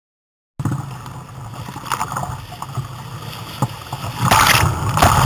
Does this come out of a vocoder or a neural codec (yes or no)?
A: no